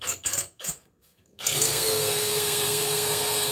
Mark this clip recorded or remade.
remade